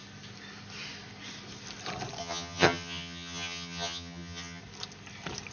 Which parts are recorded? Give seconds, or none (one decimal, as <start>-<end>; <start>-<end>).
0.0-2.2; 4.6-5.5